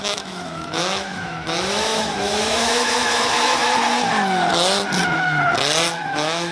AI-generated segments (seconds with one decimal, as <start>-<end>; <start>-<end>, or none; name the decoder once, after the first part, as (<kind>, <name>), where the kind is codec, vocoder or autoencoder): 0.0-3.6 (autoencoder, DAC-VAE); 6.0-6.5